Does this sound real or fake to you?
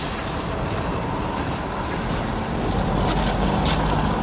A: real